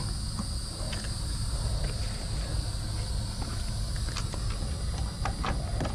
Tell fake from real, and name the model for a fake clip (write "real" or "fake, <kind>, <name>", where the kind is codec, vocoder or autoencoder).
real